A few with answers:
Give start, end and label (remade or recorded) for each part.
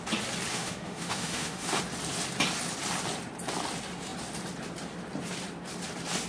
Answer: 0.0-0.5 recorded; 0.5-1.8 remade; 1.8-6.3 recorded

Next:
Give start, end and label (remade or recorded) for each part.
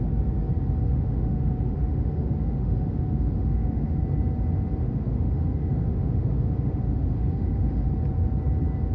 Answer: 0.0-0.8 recorded; 0.8-4.0 remade; 4.0-4.8 recorded; 4.8-7.9 remade; 7.9-8.9 recorded